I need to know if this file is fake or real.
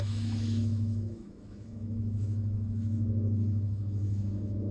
fake